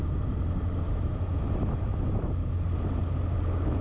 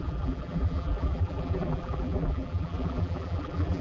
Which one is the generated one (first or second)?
second